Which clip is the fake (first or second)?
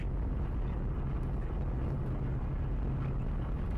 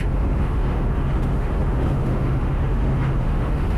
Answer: second